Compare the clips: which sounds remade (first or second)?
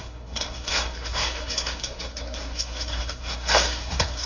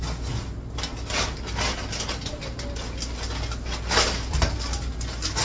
first